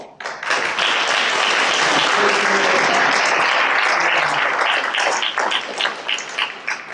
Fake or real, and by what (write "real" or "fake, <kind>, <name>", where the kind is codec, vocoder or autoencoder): real